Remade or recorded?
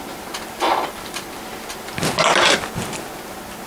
recorded